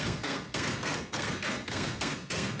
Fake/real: fake